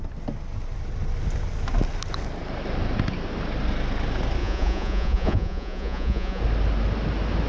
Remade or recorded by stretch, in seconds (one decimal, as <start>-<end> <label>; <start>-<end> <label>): 0.0-4.4 recorded; 4.4-6.4 remade; 6.4-7.5 recorded